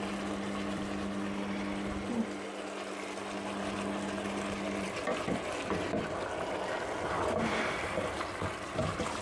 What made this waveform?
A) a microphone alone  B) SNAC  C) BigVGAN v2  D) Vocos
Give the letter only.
A